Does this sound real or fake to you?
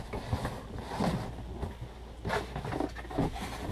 real